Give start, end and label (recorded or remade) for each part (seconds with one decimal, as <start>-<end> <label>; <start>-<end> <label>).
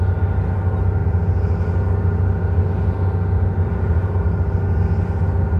0.0-5.6 recorded